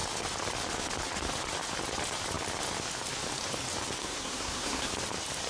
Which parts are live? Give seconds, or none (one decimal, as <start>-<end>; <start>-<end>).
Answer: 0.0-4.0; 4.9-5.5

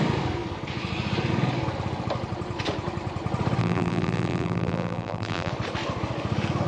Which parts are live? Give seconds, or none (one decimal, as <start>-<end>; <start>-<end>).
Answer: 0.0-3.6; 5.5-6.7

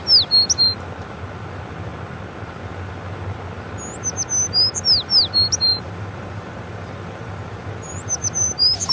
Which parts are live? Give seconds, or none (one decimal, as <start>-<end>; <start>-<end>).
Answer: 0.0-5.7

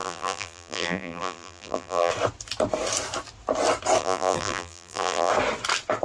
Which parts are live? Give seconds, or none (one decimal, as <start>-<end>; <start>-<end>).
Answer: 2.1-4.0; 5.3-6.0

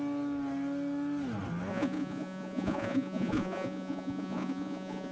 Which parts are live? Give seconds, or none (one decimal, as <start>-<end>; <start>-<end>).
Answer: 0.0-1.7